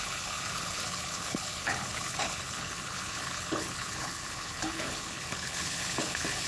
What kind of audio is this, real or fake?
fake